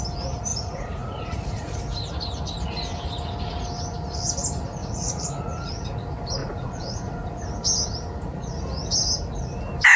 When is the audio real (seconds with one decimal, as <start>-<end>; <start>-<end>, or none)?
0.0-0.5; 1.8-4.8; 5.8-6.4; 7.3-10.0

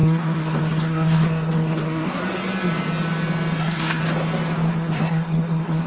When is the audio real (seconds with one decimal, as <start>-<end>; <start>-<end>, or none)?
2.2-3.6; 4.0-4.7

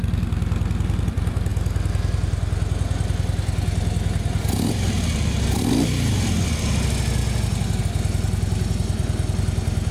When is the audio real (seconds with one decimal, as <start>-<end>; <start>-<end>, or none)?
0.0-9.9

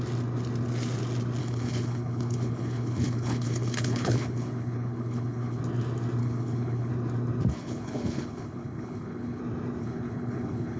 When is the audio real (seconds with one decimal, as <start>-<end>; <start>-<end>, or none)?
0.0-1.4; 5.6-6.2; 6.9-7.5; 9.4-9.8

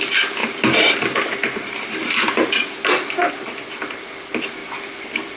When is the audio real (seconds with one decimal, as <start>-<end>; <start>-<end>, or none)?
0.0-5.4

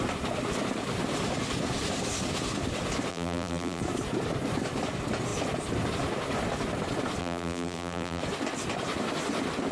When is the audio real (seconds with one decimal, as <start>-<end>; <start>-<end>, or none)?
0.0-3.1; 3.8-7.2; 8.2-9.7

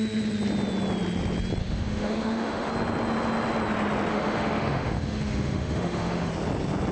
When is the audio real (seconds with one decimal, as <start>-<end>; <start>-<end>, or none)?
0.0-1.6; 2.7-4.1; 6.3-6.9